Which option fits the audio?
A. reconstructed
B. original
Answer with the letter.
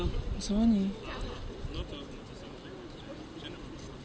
B